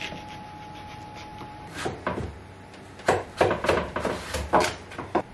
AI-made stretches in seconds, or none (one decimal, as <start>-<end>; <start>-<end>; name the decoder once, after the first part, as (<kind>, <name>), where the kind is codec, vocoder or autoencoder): 1.3-4.1 (vocoder, BigVGAN v2)